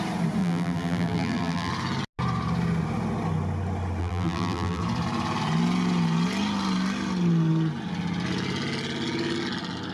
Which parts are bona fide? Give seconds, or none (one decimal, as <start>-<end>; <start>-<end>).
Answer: 0.0-0.4; 1.7-4.0; 4.8-9.9